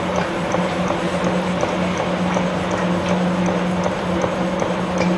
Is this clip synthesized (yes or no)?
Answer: no